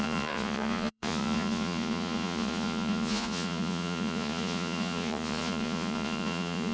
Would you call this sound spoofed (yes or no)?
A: yes